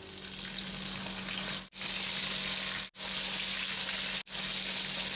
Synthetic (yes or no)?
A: no